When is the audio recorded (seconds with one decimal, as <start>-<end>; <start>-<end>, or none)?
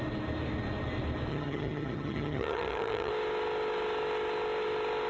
0.0-1.3; 3.1-5.1